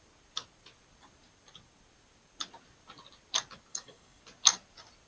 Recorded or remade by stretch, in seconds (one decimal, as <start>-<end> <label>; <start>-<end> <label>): 0.0-3.7 recorded; 3.7-4.2 remade; 4.2-5.1 recorded